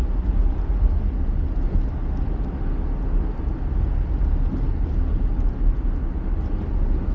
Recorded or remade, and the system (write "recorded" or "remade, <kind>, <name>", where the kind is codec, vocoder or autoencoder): recorded